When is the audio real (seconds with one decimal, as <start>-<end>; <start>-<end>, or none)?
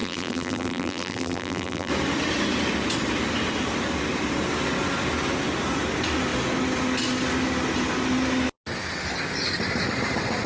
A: 1.9-10.5